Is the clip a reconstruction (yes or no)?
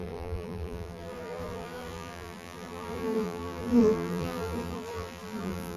yes